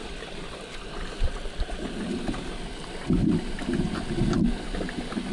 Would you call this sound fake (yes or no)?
no